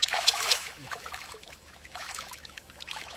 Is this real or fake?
fake